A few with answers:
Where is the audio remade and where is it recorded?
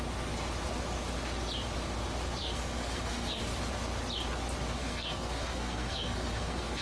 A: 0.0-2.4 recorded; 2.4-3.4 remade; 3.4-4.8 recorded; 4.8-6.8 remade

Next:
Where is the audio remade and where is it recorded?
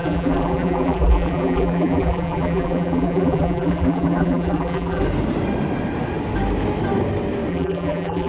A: 0.0-5.0 remade; 5.0-7.5 recorded; 7.5-8.3 remade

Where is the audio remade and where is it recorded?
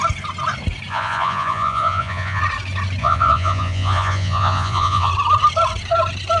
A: 0.0-0.9 recorded; 0.9-2.4 remade; 2.4-3.0 recorded; 3.0-5.1 remade; 5.1-6.4 recorded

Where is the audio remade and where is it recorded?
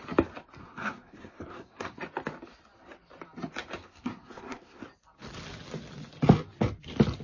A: 0.0-0.6 recorded; 0.6-2.0 remade; 2.0-3.8 recorded; 3.8-4.8 remade; 4.8-7.2 recorded